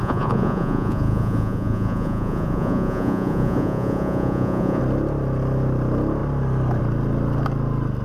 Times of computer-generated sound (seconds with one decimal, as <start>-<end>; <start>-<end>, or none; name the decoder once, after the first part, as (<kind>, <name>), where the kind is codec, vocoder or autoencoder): 0.0-4.8 (vocoder, Vocos)